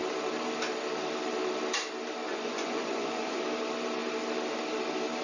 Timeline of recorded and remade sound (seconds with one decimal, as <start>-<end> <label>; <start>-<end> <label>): 0.0-2.3 recorded; 2.3-3.4 remade; 3.4-5.2 recorded